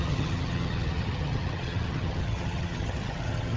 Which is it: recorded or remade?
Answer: remade